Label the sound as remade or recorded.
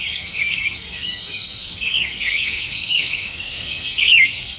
remade